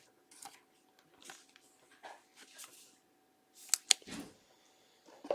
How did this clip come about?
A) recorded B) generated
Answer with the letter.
A